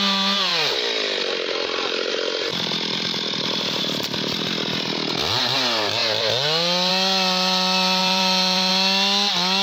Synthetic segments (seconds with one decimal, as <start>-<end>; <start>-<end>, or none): 0.5-2.1; 2.5-3.8; 8.0-8.7